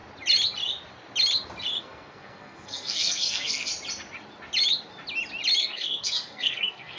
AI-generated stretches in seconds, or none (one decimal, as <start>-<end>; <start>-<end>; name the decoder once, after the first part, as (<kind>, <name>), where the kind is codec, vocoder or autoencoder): 1.8-3.7 (codec, SNAC); 5.6-7.0